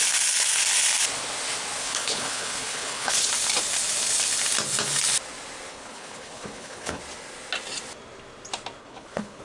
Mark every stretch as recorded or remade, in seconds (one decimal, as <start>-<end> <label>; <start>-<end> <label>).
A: 0.0-1.8 recorded; 1.8-3.3 remade; 3.3-5.7 recorded; 5.7-7.0 remade; 7.0-8.8 recorded; 8.8-9.4 remade